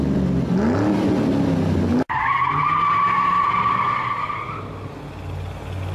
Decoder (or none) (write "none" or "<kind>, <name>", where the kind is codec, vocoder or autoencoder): none